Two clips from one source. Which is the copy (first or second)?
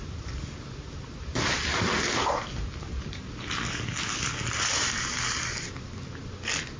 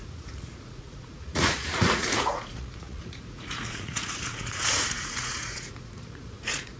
second